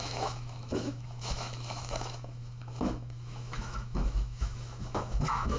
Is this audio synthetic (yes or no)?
yes